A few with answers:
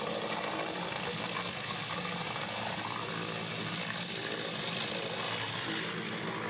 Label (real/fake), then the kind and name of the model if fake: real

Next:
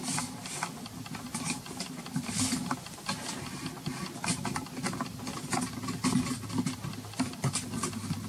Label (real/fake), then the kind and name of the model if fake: real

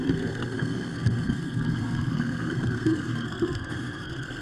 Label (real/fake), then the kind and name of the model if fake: fake, codec, SNAC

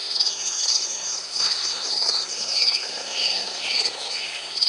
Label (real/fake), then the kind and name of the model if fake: fake, codec, SNAC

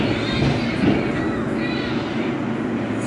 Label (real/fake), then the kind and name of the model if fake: real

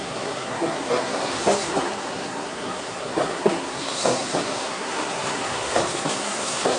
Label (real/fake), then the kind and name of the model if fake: fake, codec, SNAC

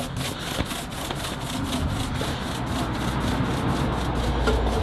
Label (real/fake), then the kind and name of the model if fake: real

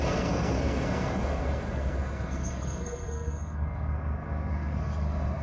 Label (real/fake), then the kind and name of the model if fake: fake, codec, SNAC